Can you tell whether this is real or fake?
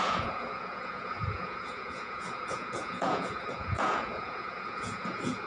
fake